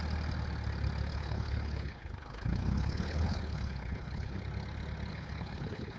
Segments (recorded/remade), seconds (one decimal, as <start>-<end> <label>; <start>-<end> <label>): 0.0-1.1 recorded; 1.1-4.4 remade; 4.4-5.1 recorded; 5.1-6.0 remade